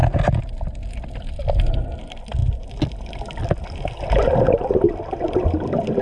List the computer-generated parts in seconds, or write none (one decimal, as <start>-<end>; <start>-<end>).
2.0-2.4